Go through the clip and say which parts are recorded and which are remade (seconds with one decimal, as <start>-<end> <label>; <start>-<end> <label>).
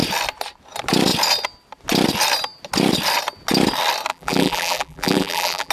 0.0-4.1 recorded; 4.1-5.7 remade